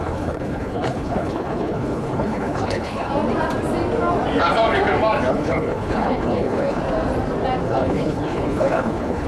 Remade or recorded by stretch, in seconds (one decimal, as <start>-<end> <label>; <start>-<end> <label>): 0.0-3.1 remade; 3.1-5.3 recorded; 5.3-6.8 remade; 6.8-7.6 recorded; 7.6-9.3 remade